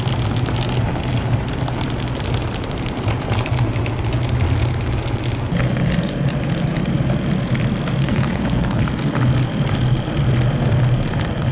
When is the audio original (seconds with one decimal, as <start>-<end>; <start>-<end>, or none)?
0.0-8.0; 8.8-11.5